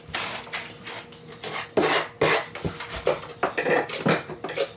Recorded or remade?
recorded